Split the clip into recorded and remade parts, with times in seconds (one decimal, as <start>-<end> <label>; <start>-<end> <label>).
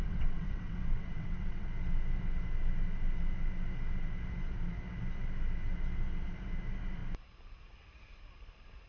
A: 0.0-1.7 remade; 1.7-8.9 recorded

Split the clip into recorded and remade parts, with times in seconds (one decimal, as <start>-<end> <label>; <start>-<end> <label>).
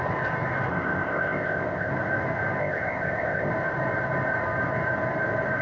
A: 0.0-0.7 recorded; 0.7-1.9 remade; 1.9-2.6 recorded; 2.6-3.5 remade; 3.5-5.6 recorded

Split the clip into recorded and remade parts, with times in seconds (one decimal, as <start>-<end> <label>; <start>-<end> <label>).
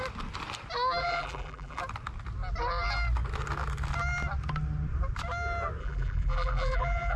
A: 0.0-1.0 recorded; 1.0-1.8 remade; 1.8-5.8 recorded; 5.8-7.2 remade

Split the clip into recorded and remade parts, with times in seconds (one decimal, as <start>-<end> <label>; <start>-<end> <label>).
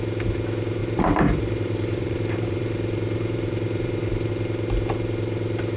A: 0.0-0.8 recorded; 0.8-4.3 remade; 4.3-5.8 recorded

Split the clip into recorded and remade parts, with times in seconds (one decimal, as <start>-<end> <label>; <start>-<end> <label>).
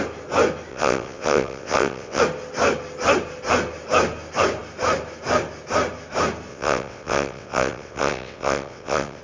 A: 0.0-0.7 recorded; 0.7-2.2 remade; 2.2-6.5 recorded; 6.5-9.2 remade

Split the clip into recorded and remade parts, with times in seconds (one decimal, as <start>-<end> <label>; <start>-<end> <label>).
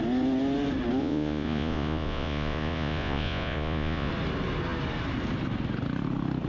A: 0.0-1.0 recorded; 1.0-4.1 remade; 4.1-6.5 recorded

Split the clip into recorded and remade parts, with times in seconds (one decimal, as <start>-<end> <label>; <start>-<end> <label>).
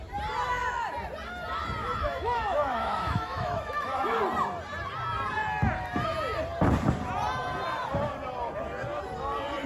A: 0.0-1.8 recorded; 1.8-4.2 remade; 4.2-9.7 recorded